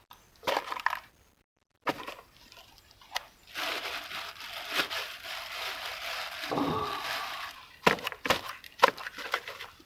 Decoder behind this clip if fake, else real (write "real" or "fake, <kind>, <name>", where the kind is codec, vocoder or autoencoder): fake, vocoder, BigVGAN v2